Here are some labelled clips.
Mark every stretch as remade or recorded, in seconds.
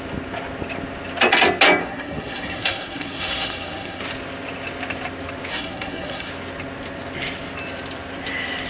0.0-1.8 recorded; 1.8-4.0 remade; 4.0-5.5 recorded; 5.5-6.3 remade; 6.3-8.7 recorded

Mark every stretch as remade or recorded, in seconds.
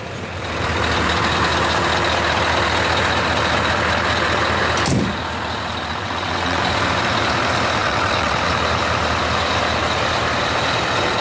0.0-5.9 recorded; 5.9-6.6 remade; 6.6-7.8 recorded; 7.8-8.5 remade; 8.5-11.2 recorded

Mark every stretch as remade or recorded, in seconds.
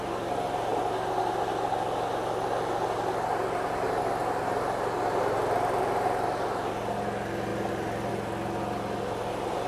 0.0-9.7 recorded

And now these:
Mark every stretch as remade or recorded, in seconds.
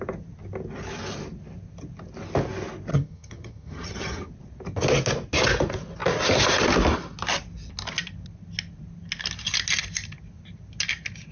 0.0-2.9 recorded; 2.9-4.3 remade; 4.3-11.3 recorded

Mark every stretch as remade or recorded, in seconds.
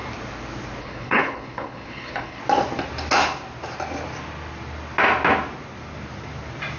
0.0-0.8 recorded; 0.8-2.4 remade; 2.4-6.8 recorded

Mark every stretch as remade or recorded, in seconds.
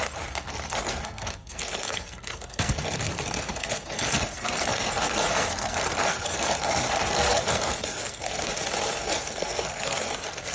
0.0-8.5 remade; 8.5-9.0 recorded; 9.0-10.5 remade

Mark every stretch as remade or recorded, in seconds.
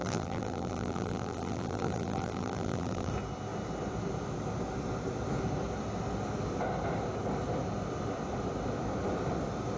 0.0-3.1 remade; 3.1-9.8 recorded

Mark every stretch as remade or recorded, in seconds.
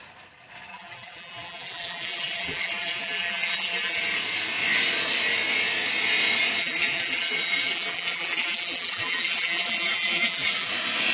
0.0-0.7 recorded; 0.7-4.0 remade; 4.0-6.6 recorded; 6.6-10.7 remade; 10.7-11.1 recorded